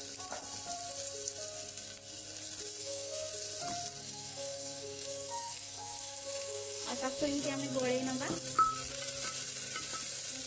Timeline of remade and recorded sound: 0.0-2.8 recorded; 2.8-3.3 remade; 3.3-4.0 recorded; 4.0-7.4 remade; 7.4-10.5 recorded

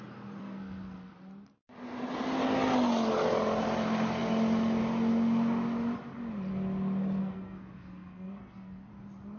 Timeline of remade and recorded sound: 0.0-0.4 recorded; 0.4-1.1 remade; 1.1-7.2 recorded; 7.2-8.9 remade; 8.9-9.4 recorded

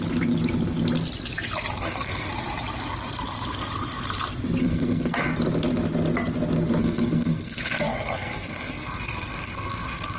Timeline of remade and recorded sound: 0.0-1.8 recorded; 1.8-2.3 remade; 2.3-4.6 recorded; 4.6-5.4 remade; 5.4-6.8 recorded; 6.8-10.2 remade

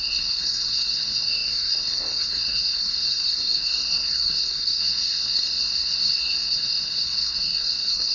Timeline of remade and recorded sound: 0.0-8.1 remade

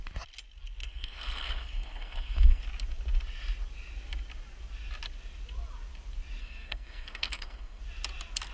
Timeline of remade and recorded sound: 0.0-0.8 recorded; 0.8-2.6 remade; 2.6-6.4 recorded; 6.4-7.8 remade; 7.8-8.5 recorded

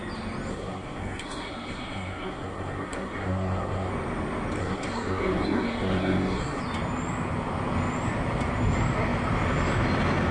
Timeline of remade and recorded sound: 0.0-0.5 recorded; 0.5-3.9 remade; 3.9-4.6 recorded; 4.6-6.6 remade; 6.6-10.3 recorded